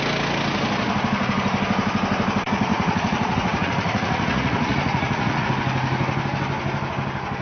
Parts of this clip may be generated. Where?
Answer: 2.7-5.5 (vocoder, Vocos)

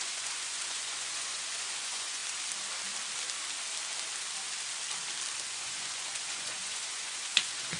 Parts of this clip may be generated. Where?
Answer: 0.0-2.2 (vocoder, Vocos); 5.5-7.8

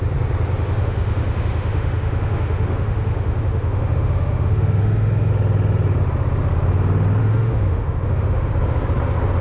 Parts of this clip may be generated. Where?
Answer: 0.8-5.3 (autoencoder, DAC-VAE); 7.2-8.5

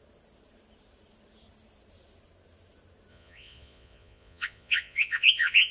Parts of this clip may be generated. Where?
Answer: 3.1-5.7 (vocoder, Vocos)

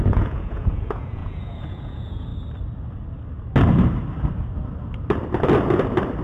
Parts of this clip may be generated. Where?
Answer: 0.0-2.3 (vocoder, Vocos)